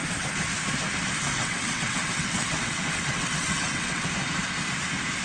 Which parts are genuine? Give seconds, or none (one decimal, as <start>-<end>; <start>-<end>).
0.0-1.3; 4.1-5.2